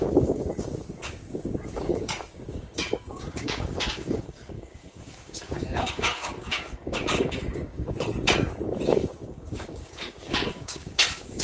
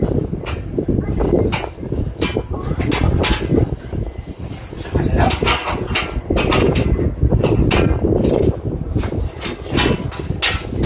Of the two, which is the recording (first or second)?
second